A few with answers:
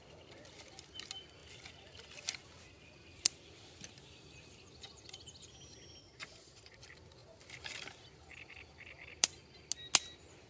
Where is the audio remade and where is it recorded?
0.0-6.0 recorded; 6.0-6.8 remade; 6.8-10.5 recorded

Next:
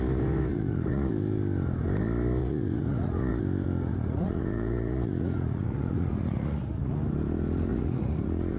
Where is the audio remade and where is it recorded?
0.0-0.5 recorded; 0.5-1.1 remade; 1.1-2.4 recorded; 2.4-3.4 remade; 3.4-3.9 recorded; 3.9-6.9 remade; 6.9-7.7 recorded; 7.7-8.6 remade

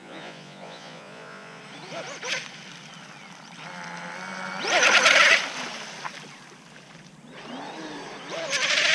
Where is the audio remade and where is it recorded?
0.0-1.6 remade; 1.6-8.9 recorded

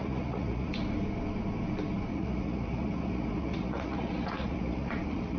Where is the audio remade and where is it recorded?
0.0-0.7 remade; 0.7-2.1 recorded; 2.1-5.4 remade

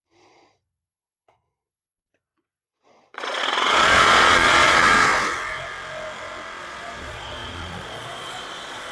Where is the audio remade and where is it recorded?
0.0-5.1 remade; 5.1-6.6 recorded; 6.6-8.9 remade

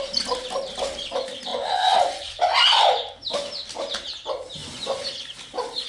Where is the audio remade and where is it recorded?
0.0-1.5 recorded; 1.5-2.4 remade; 2.4-4.6 recorded; 4.6-5.2 remade; 5.2-5.9 recorded

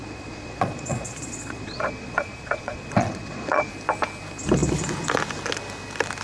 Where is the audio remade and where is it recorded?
0.0-3.7 remade; 3.7-6.2 recorded